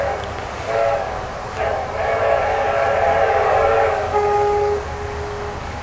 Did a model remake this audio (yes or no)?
yes